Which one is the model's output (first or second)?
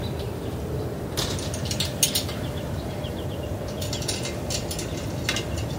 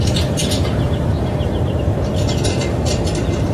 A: second